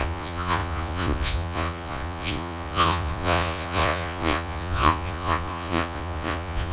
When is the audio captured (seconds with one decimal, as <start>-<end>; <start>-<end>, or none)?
none